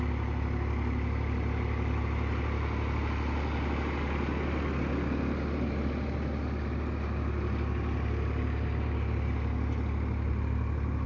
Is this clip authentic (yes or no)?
yes